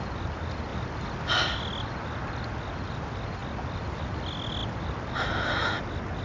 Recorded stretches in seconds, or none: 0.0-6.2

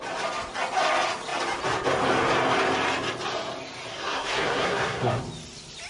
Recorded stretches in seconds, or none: 0.0-3.9; 5.2-5.9

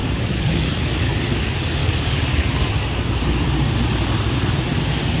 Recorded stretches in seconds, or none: 1.2-1.8; 2.7-5.2

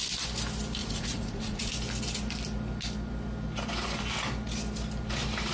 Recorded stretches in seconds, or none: 0.0-0.8; 1.7-5.5

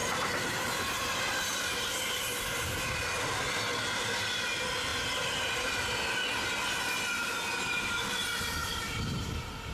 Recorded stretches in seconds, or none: 0.0-8.6; 9.2-9.7